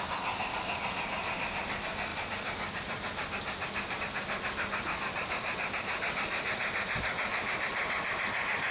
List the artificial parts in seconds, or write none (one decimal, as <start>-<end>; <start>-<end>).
none